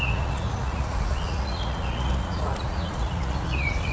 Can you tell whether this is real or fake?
fake